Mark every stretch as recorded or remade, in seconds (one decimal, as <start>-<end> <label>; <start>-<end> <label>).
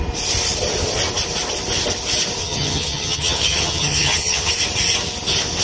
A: 0.0-2.4 recorded; 2.4-4.5 remade; 4.5-5.6 recorded